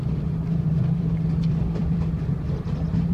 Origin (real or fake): fake